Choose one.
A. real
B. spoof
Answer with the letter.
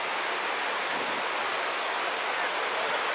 A